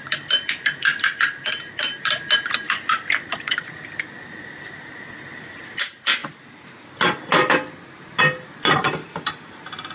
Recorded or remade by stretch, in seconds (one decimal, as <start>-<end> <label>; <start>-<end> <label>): 0.0-9.9 recorded